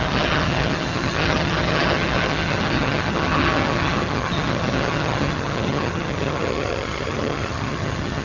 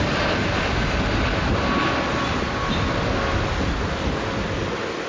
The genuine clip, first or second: second